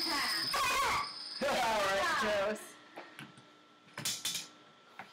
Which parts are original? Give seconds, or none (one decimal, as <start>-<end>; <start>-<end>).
0.0-5.1